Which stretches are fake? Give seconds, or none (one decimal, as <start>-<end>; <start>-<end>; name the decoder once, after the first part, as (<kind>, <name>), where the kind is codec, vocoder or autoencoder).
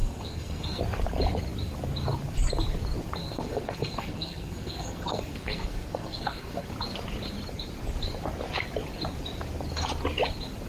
0.0-0.8 (codec, SNAC); 3.2-6.7